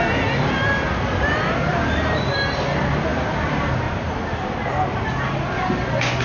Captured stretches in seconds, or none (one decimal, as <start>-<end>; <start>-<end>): 0.0-1.7; 2.3-3.1; 4.1-6.2